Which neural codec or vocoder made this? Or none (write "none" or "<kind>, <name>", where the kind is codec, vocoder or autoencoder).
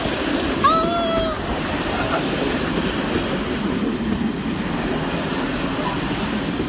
none